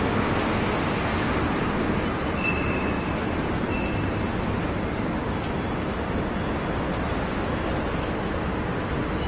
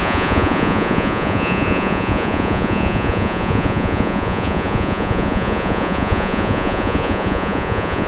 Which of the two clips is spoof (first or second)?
second